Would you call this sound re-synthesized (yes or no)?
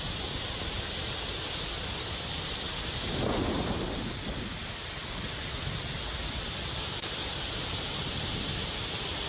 no